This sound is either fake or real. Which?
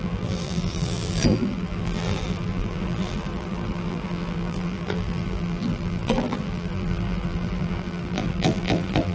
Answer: fake